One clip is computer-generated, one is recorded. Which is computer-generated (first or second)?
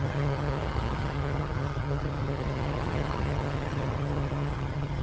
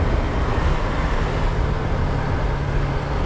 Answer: first